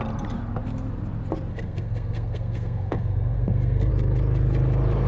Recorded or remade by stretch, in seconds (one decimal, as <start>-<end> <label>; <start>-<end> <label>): 0.0-1.5 recorded; 1.5-3.9 remade; 3.9-5.1 recorded